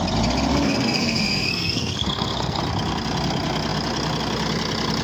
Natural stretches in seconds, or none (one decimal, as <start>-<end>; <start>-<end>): 0.0-0.5; 2.6-5.0